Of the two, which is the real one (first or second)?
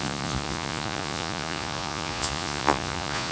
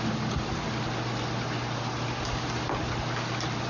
second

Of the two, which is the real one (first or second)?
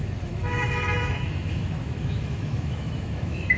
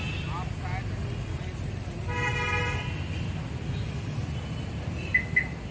second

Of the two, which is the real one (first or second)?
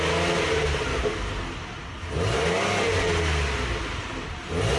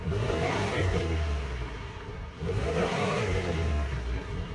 first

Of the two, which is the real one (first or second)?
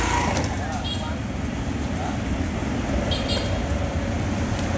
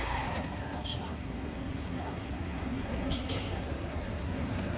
first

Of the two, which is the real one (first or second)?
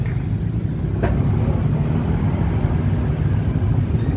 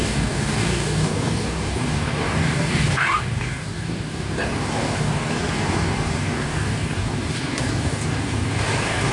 first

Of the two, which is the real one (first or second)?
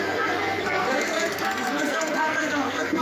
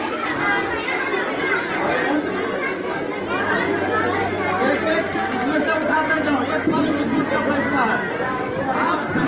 second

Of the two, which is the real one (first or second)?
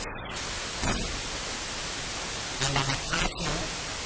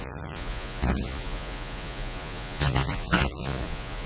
first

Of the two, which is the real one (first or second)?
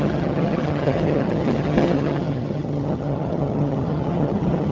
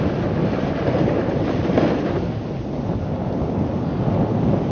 second